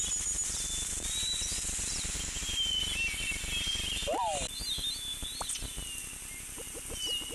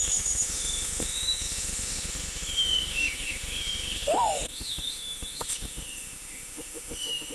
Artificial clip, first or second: second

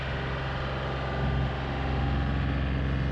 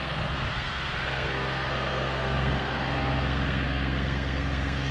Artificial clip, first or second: second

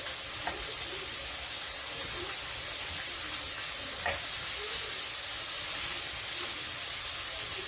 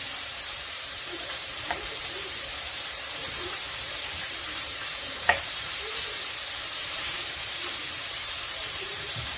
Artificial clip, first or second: second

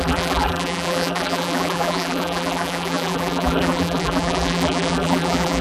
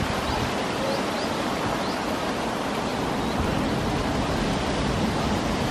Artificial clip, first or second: first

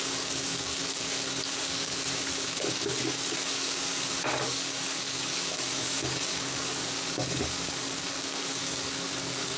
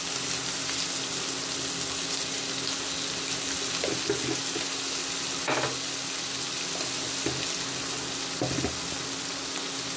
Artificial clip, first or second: first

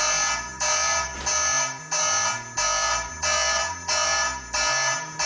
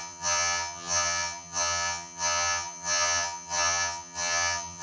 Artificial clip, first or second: second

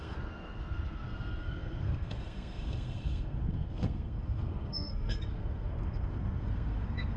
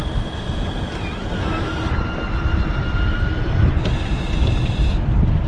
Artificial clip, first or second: first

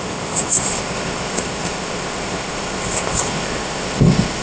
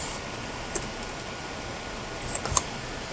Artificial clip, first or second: first